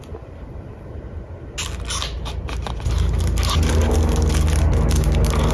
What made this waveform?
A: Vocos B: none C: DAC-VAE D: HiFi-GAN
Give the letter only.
B